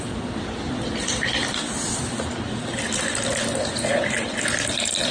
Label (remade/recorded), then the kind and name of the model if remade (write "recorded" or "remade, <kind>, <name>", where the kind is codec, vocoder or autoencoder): remade, vocoder, BigVGAN v2